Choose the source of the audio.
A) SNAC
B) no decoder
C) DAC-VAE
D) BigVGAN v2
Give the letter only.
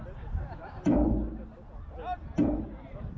D